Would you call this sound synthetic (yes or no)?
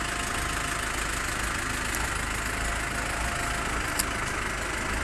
no